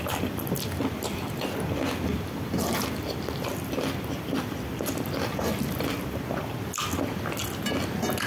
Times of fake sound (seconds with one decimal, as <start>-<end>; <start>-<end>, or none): none